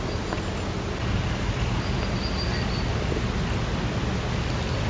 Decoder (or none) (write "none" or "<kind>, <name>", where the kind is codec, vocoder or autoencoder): none